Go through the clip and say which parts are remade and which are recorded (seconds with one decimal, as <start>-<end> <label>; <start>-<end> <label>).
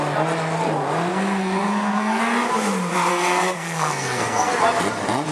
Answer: 0.0-1.1 recorded; 1.1-2.2 remade; 2.2-3.1 recorded; 3.1-4.6 remade; 4.6-5.3 recorded